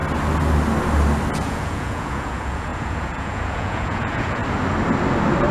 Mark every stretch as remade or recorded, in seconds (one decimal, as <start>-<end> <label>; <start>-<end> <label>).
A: 0.0-1.3 recorded; 1.3-4.4 remade; 4.4-5.5 recorded

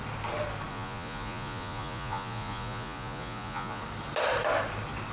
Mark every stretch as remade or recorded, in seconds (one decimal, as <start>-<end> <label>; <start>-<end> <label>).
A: 0.0-0.7 recorded; 0.7-3.8 remade; 3.8-5.1 recorded

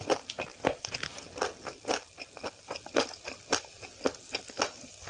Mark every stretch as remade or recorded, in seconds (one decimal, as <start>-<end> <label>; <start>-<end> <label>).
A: 0.0-0.5 recorded; 0.5-1.1 remade; 1.1-5.1 recorded